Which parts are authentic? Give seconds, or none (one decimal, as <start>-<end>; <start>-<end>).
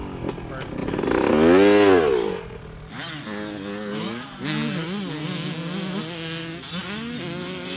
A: 0.0-0.8; 1.3-7.8